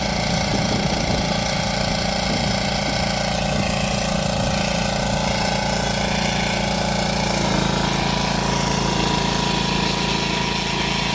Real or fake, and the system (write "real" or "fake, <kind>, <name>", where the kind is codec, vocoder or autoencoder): real